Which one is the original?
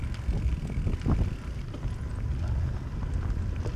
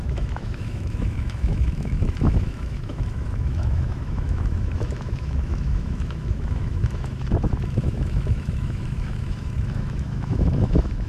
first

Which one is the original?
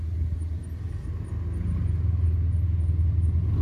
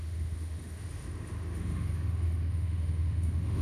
first